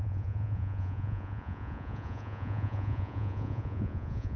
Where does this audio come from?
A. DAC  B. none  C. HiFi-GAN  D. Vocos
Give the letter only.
D